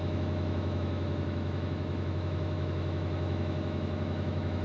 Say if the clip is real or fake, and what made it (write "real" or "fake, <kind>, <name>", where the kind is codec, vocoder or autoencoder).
fake, autoencoder, DAC-VAE